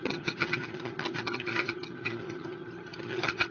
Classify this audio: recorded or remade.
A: remade